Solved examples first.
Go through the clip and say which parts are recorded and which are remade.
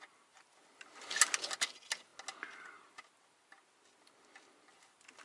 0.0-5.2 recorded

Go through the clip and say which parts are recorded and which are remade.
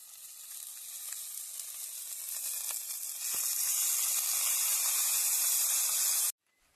0.0-4.7 recorded; 4.7-5.5 remade; 5.5-6.8 recorded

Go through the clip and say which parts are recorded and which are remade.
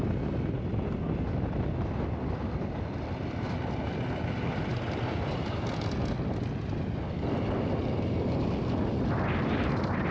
0.0-10.1 recorded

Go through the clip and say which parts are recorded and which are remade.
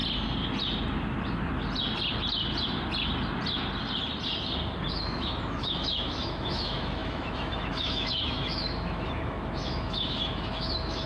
0.0-4.9 recorded; 4.9-11.1 remade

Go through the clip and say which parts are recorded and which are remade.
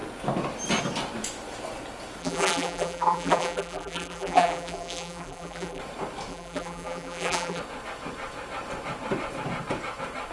0.0-2.2 recorded; 2.2-5.8 remade; 5.8-6.3 recorded; 6.3-7.6 remade; 7.6-10.3 recorded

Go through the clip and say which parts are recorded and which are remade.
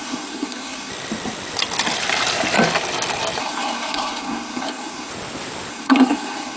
0.0-0.9 remade; 0.9-3.4 recorded; 3.4-5.1 remade; 5.1-5.7 recorded; 5.7-6.6 remade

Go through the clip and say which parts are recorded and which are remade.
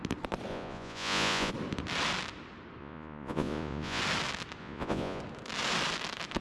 0.0-0.5 recorded; 0.5-1.5 remade; 1.5-2.8 recorded; 2.8-4.0 remade; 4.0-4.6 recorded; 4.6-5.2 remade; 5.2-6.4 recorded